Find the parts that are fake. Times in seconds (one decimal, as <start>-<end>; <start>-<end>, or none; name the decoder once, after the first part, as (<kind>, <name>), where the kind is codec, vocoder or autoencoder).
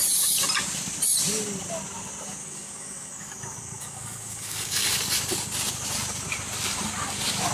2.4-5.0 (codec, DAC)